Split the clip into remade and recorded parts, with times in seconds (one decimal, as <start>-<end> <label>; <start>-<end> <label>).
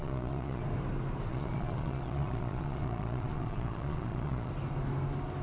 0.0-0.6 remade; 0.6-1.3 recorded; 1.3-4.5 remade; 4.5-5.4 recorded